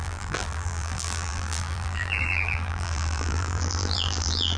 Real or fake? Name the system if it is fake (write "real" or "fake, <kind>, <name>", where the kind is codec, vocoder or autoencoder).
fake, vocoder, BigVGAN v2